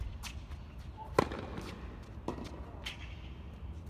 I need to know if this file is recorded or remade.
recorded